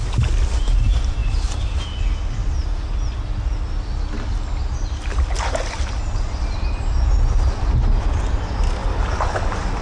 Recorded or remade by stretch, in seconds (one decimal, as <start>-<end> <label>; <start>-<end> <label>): 0.0-9.8 recorded